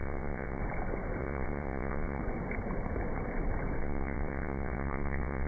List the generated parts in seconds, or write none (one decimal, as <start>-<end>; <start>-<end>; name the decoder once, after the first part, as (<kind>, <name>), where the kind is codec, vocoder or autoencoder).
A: 0.0-0.6 (vocoder, WaveNeXt); 1.2-2.2; 3.8-5.5